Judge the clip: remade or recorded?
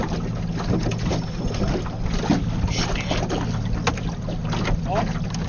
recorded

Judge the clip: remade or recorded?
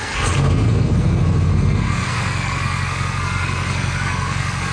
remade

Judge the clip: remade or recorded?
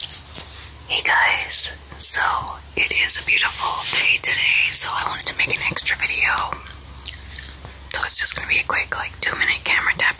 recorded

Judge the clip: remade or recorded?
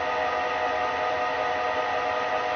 recorded